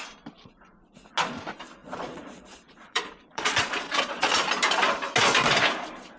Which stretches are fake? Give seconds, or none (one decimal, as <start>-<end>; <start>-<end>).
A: 1.8-4.4